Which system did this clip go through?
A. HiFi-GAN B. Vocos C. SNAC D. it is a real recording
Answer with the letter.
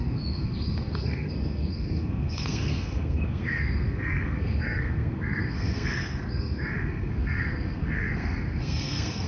C